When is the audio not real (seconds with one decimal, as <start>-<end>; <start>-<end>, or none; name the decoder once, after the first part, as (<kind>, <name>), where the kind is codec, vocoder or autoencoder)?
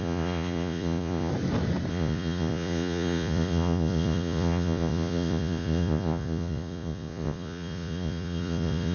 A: 0.0-1.3 (vocoder, Vocos); 1.9-8.9